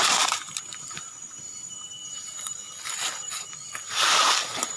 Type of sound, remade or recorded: remade